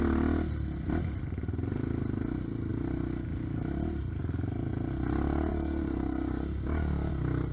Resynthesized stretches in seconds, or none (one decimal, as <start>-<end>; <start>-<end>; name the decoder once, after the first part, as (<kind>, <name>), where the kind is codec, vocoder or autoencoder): 5.5-7.1 (codec, DAC)